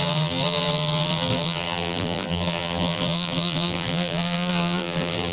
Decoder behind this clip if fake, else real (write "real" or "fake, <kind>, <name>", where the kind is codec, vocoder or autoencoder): fake, vocoder, BigVGAN v2